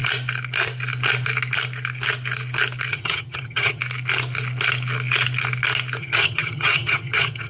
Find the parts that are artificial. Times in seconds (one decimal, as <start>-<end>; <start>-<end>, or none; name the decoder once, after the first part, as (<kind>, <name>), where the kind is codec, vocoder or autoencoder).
2.9-3.8 (vocoder, HiFi-GAN); 6.0-7.5